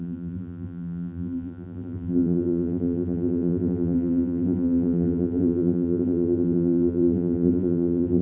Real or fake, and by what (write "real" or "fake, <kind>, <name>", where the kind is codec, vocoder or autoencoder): fake, vocoder, BigVGAN v2